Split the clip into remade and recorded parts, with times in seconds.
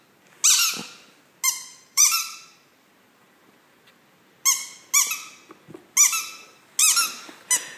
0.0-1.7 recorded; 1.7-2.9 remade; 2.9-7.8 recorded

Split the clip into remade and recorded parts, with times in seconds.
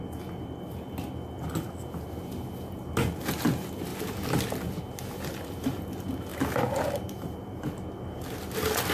0.0-8.9 recorded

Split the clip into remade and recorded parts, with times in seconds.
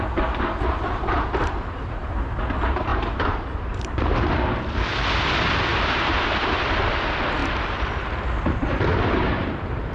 0.0-2.9 recorded; 2.9-4.4 remade; 4.4-5.7 recorded; 5.7-6.7 remade; 6.7-9.9 recorded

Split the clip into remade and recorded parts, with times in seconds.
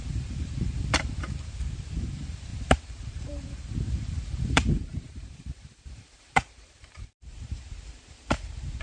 0.0-8.8 remade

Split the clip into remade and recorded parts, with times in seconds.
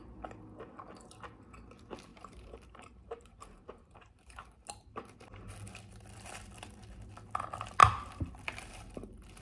0.0-2.1 recorded; 2.1-4.4 remade; 4.4-9.4 recorded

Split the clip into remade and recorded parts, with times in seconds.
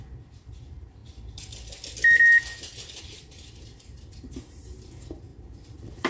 0.0-1.0 remade; 1.0-3.0 recorded; 3.0-6.1 remade